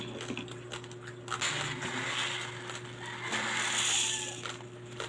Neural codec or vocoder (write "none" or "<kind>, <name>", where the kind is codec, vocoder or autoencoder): none